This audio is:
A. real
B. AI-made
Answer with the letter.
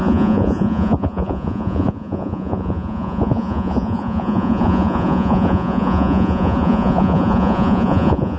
B